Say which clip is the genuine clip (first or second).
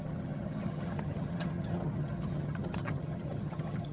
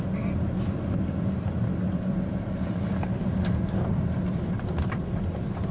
second